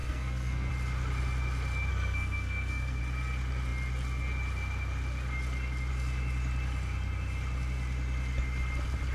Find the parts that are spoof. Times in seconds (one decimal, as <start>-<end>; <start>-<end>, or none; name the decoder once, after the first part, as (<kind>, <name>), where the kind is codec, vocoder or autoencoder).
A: 0.0-0.7 (codec, SNAC); 1.9-3.0